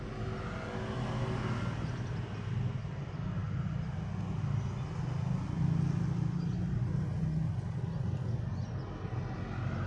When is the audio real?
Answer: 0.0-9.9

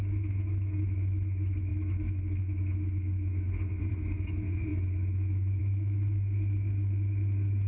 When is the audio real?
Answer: none

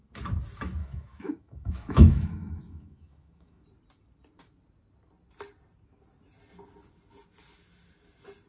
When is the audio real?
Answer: 0.0-0.8; 3.6-8.5

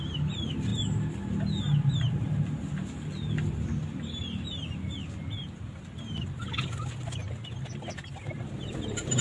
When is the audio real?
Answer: 0.0-9.2

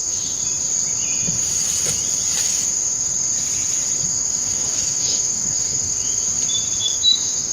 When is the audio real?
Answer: 0.4-2.4; 3.1-4.2; 6.3-6.8